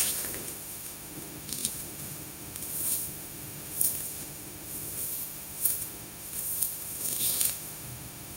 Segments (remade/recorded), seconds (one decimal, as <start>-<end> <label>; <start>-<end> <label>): 0.0-8.4 remade